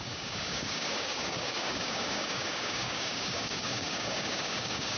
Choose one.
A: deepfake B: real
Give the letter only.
A